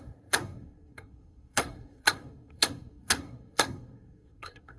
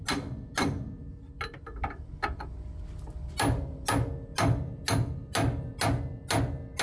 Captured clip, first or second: second